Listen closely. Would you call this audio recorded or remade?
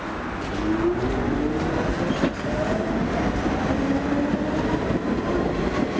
recorded